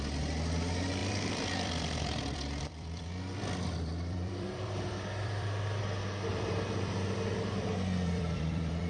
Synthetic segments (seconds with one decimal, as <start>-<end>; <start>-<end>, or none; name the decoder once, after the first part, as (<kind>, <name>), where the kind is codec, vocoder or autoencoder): 1.0-5.8 (vocoder, BigVGAN v2); 6.3-8.9